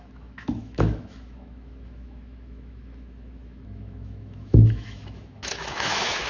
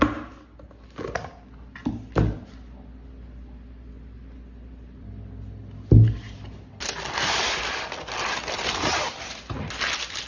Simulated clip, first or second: first